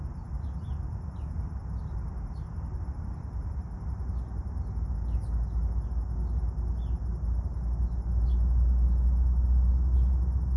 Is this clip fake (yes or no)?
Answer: no